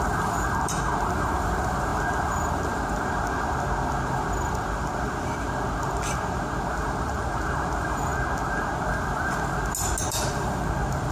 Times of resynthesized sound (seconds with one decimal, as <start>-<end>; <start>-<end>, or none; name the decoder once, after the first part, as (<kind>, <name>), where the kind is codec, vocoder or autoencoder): 0.0-1.9 (vocoder, BigVGAN v2); 6.7-8.1; 10.1-11.1